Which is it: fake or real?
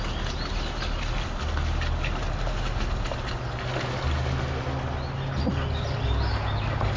real